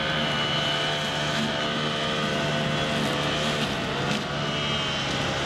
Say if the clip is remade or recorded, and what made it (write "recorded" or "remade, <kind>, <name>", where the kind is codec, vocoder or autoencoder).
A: recorded